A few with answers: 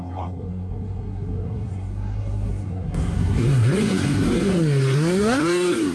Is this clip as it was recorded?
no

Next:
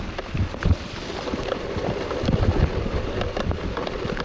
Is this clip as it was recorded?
no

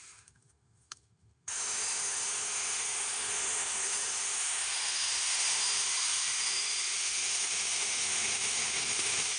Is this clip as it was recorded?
no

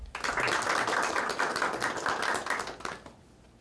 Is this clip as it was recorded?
yes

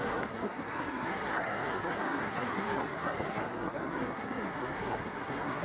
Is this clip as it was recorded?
no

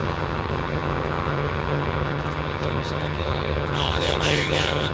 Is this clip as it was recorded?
no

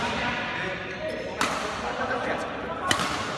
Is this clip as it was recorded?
yes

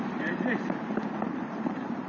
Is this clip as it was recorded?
no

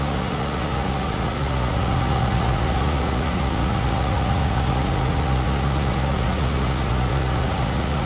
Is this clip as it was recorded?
no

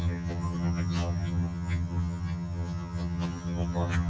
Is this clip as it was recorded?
no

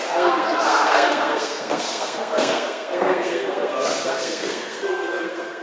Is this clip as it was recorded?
no